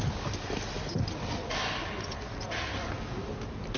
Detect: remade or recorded recorded